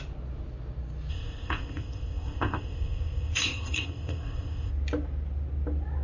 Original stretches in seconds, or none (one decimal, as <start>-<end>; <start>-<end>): 0.0-1.1; 4.7-6.0